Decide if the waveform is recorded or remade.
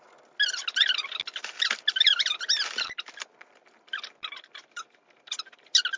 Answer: recorded